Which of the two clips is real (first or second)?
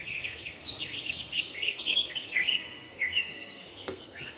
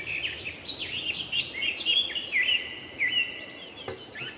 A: second